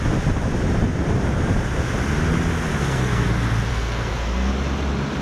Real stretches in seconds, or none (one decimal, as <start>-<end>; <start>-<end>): 0.0-2.8; 3.3-3.7; 4.5-5.2